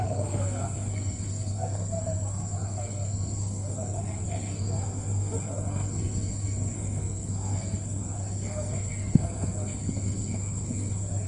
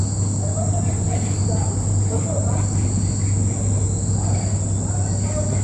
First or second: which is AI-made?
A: first